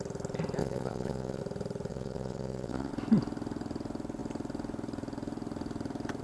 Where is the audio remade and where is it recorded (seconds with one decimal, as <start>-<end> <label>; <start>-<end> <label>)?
0.0-0.6 recorded; 0.6-1.4 remade; 1.4-1.9 recorded; 1.9-2.9 remade; 2.9-6.2 recorded